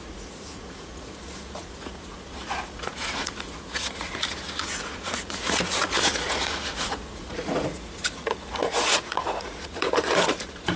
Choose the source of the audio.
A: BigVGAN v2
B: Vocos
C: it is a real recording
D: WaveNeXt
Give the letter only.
B